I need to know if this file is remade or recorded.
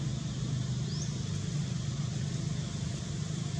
recorded